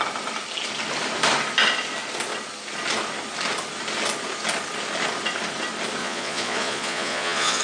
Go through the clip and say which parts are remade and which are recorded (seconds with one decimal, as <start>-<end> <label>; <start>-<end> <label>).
0.0-6.0 recorded; 6.0-7.6 remade

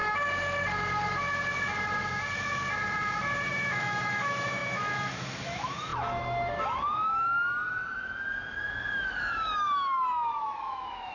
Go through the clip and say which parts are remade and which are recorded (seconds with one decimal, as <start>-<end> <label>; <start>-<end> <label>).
0.0-3.5 recorded; 3.5-11.1 remade

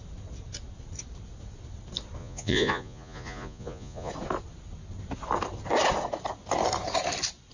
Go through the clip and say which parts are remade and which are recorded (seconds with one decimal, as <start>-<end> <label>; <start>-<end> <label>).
0.0-2.2 recorded; 2.2-4.1 remade; 4.1-7.5 recorded